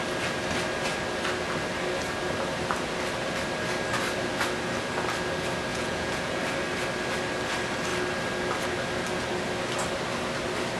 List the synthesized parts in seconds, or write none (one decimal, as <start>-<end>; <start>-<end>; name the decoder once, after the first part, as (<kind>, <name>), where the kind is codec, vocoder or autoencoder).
5.7-6.4 (vocoder, Vocos)